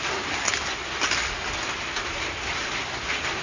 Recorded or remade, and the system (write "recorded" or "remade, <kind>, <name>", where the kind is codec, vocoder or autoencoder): recorded